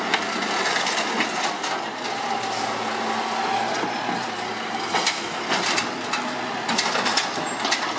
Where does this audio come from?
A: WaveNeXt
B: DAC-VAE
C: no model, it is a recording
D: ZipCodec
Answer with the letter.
C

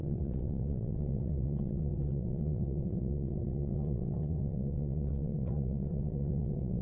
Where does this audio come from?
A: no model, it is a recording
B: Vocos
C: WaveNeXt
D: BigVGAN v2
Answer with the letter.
C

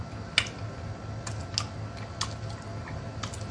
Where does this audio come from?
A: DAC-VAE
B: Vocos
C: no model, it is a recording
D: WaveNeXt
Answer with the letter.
C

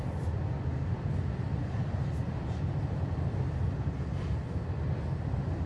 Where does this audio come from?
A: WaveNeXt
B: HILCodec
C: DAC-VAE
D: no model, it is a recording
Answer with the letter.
D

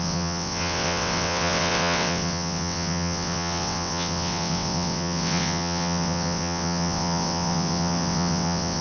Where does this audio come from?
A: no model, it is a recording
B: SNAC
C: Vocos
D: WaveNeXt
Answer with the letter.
D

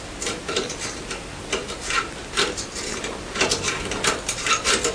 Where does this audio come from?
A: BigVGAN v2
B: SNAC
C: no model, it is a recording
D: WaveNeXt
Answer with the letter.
C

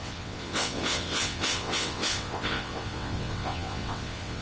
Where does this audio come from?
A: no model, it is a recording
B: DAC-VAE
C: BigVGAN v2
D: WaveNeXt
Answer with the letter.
D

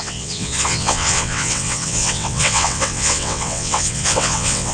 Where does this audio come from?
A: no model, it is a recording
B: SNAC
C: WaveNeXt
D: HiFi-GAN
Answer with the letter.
C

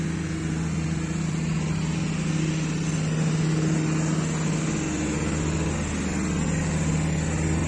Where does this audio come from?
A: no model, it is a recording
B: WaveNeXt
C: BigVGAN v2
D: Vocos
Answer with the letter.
A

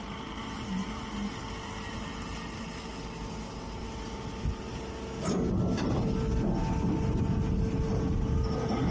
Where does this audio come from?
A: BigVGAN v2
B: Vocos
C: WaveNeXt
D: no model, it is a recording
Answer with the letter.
D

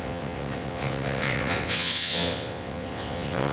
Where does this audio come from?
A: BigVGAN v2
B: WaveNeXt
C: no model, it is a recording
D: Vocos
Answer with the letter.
B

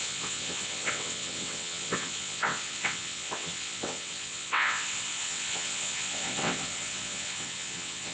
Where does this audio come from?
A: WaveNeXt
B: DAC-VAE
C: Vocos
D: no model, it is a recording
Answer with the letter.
A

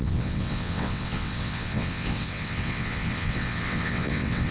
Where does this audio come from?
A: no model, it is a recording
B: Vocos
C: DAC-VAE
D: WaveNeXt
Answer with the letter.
D